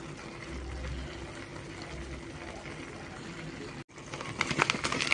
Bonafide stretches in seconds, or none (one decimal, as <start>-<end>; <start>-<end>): 0.0-5.1